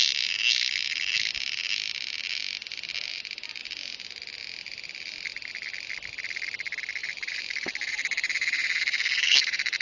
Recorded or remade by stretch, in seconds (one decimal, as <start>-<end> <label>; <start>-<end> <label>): 0.0-3.1 recorded; 3.1-3.6 remade; 3.6-7.0 recorded; 7.0-9.8 remade